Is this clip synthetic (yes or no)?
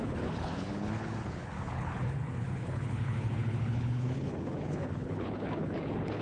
yes